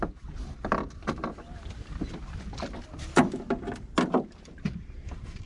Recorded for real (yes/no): yes